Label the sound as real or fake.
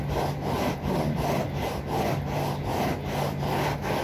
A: real